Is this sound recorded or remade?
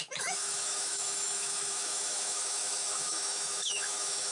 remade